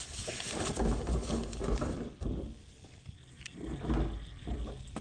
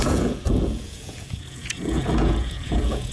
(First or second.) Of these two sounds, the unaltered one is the first